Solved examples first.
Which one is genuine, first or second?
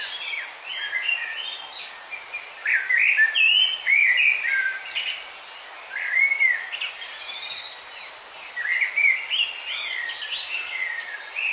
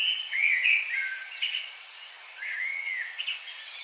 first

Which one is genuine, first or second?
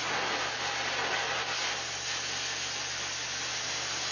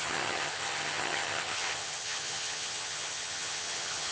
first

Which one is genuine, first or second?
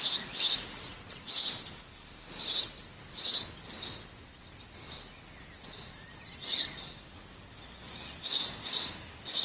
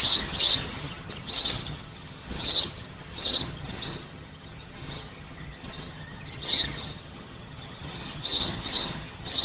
first